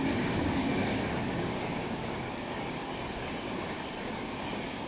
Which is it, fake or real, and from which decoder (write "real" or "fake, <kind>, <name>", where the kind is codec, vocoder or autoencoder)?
fake, codec, DAC